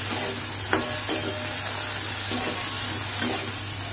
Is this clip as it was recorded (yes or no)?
yes